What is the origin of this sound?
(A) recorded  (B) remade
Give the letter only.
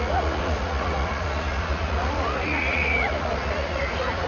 B